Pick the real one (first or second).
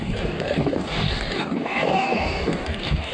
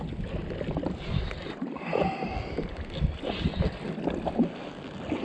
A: second